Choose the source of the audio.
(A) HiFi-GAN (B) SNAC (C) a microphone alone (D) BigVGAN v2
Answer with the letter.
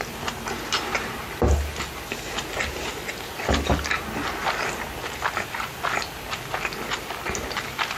C